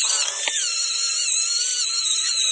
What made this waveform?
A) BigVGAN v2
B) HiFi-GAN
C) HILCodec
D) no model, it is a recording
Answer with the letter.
D